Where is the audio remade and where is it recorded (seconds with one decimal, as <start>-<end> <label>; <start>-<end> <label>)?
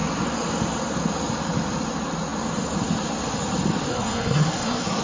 0.0-3.9 recorded; 3.9-5.0 remade